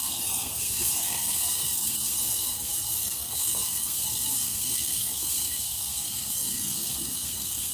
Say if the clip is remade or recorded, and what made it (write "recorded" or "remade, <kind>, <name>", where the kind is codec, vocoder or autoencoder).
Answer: remade, codec, SNAC